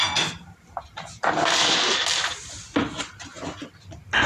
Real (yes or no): yes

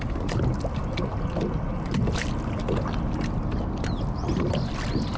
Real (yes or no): yes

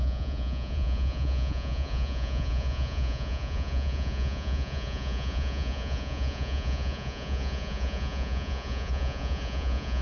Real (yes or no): no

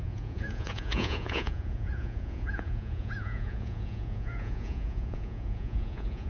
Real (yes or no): no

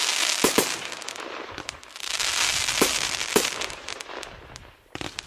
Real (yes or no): yes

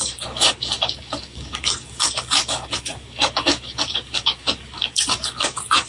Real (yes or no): no